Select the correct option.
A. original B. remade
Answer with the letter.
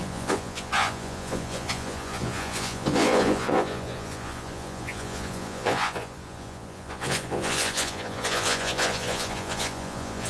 B